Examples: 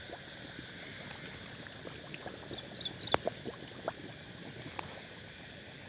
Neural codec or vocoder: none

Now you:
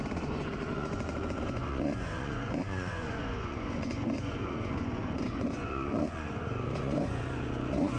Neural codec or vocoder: vocoder, Vocos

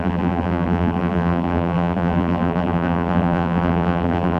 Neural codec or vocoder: vocoder, BigVGAN v2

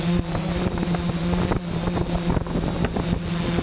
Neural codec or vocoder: none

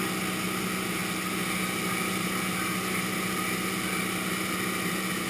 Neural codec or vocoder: none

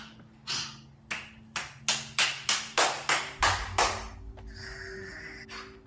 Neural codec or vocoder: none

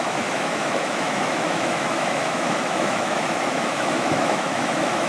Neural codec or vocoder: autoencoder, DAC-VAE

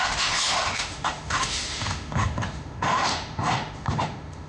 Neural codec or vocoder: autoencoder, DAC-VAE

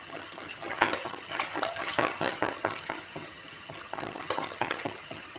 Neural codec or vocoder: vocoder, HiFi-GAN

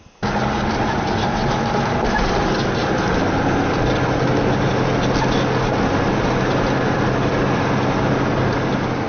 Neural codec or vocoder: none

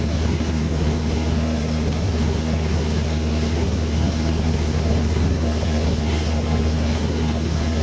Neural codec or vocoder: codec, SNAC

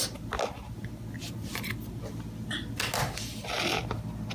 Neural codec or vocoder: none